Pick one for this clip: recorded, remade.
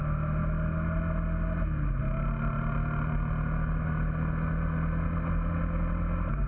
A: recorded